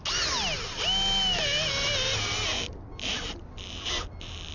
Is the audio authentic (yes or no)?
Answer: yes